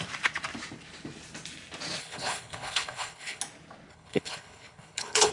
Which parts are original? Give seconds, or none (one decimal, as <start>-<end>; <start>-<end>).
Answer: 0.0-2.0; 3.4-3.9

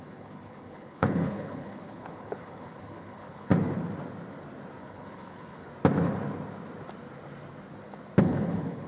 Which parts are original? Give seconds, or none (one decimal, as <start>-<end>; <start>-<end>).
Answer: 3.5-4.8; 5.7-8.2

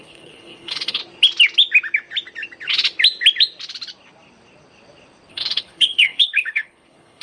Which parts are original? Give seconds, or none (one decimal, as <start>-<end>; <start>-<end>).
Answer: 1.0-5.3

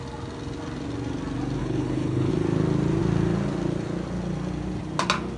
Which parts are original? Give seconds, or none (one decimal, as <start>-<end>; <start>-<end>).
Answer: 0.0-1.6; 2.3-5.4